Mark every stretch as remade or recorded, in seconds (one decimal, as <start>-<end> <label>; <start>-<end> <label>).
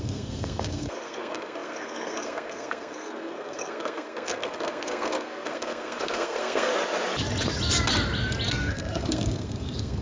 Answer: 0.0-6.7 remade; 6.7-8.5 recorded; 8.5-10.0 remade